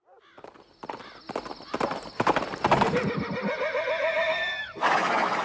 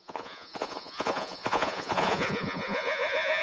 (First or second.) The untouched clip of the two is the first